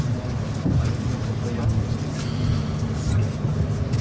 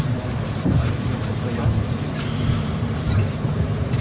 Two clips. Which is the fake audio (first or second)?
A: second